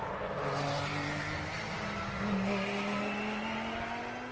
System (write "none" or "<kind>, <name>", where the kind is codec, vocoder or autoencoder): none